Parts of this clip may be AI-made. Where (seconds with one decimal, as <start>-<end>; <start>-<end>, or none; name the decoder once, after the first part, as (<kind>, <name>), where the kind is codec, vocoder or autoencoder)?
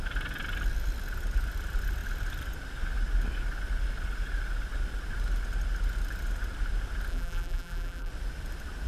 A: 7.1-8.1 (vocoder, BigVGAN v2)